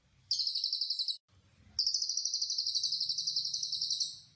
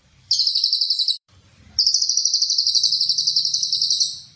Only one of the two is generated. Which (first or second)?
second